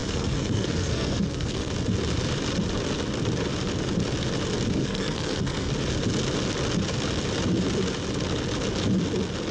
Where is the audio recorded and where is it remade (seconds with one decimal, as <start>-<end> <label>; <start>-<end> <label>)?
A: 0.0-1.7 remade; 1.7-4.8 recorded; 4.8-5.7 remade; 5.7-9.5 recorded